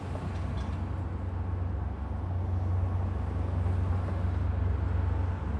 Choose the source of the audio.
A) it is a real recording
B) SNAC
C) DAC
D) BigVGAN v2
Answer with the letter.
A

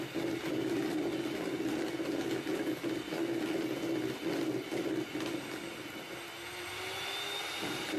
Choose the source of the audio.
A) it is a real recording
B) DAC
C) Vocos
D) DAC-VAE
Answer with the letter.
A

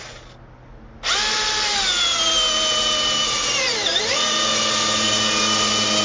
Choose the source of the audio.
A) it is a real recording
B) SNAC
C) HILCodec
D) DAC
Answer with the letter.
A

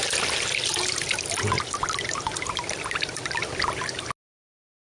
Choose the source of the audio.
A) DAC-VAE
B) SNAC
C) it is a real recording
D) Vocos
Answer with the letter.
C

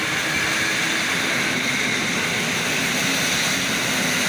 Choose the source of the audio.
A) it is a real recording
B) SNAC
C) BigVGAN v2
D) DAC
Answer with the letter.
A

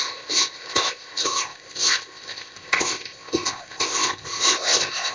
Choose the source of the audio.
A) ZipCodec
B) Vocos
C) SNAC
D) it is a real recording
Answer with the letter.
A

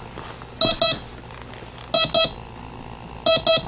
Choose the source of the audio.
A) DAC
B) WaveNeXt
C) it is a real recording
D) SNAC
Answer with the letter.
C